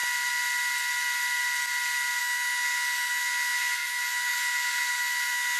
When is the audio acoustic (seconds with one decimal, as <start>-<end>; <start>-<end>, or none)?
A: 0.0-2.2